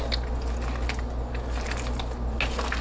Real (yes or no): yes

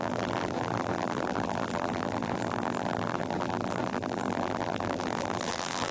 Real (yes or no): no